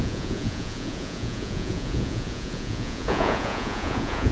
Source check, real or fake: fake